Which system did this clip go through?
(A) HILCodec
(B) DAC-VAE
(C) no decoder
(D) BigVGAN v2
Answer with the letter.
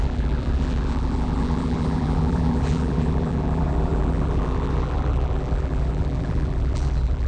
D